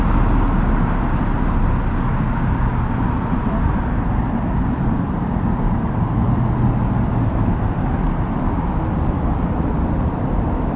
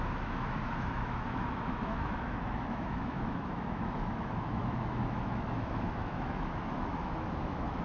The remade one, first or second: second